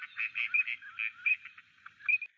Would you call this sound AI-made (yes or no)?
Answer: no